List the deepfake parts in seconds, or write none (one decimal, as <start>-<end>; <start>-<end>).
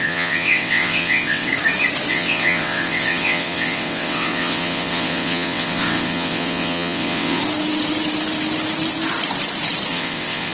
0.0-1.5; 2.1-7.4; 9.9-10.5